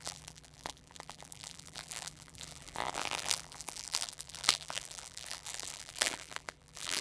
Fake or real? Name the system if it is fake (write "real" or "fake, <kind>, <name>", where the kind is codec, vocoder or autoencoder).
fake, vocoder, BigVGAN v2